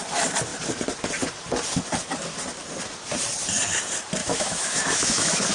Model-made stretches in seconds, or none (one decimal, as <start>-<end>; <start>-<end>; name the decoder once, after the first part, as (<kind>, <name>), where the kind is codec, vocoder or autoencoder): 4.2-5.5 (autoencoder, DAC-VAE)